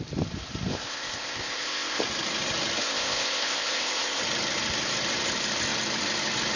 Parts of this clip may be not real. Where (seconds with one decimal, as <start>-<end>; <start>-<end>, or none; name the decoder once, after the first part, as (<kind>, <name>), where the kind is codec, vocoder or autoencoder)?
0.7-2.0 (codec, ZipCodec); 2.8-4.2